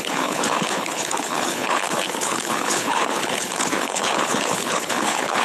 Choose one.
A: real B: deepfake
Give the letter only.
B